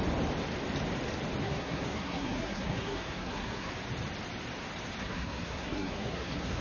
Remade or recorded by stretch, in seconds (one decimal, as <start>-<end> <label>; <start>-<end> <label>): 0.0-1.4 recorded; 1.4-3.7 remade; 3.7-5.0 recorded; 5.0-6.6 remade